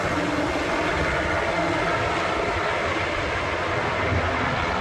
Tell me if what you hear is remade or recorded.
recorded